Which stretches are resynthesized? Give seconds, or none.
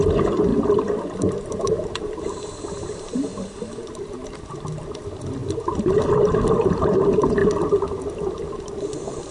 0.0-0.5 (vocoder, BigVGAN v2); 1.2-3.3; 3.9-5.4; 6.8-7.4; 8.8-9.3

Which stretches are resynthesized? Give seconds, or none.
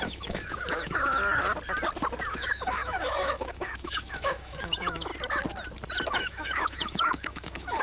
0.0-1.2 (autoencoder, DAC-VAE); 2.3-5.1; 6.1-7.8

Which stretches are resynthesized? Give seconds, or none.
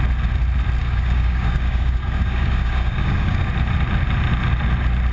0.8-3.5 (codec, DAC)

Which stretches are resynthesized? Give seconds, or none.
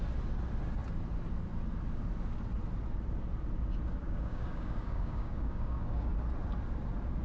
4.0-6.1 (codec, DAC)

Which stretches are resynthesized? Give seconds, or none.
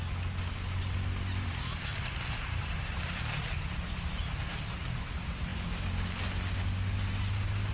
none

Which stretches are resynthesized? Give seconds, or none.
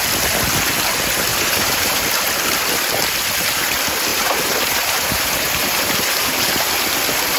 1.3-1.9 (vocoder, BigVGAN v2); 4.1-6.7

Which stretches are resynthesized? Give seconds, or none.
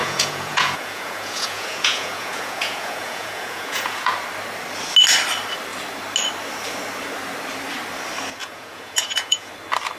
0.0-4.1 (vocoder, Vocos); 8.4-9.5